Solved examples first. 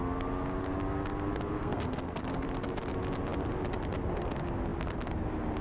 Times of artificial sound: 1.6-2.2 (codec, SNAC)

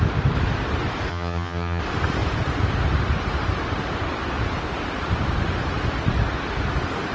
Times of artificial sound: 1.1-1.8 (vocoder, HiFi-GAN)